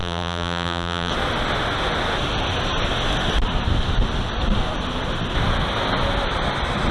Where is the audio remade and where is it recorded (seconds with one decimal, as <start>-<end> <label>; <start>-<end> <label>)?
0.0-1.1 remade; 1.1-6.9 recorded